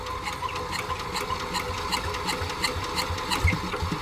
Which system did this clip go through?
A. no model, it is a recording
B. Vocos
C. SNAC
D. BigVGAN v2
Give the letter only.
A